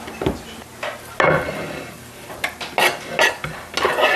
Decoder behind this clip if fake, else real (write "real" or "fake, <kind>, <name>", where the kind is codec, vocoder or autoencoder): real